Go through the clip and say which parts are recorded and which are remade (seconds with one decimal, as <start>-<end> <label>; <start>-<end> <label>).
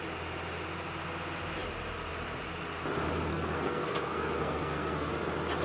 0.0-3.3 recorded; 3.3-5.1 remade; 5.1-5.6 recorded